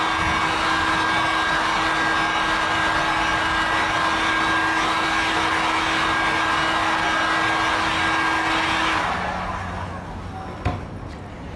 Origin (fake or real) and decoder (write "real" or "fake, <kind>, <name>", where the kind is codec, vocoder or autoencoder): real